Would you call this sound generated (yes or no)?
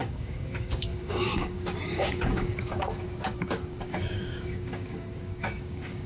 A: yes